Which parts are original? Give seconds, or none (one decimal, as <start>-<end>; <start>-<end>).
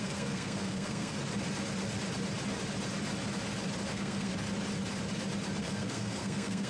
1.2-3.9; 4.3-5.6